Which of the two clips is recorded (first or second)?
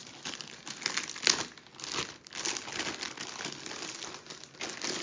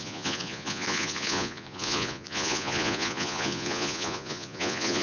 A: first